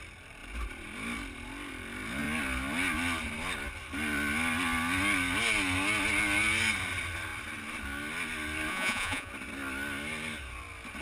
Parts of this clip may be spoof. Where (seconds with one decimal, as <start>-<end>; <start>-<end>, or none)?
8.7-9.3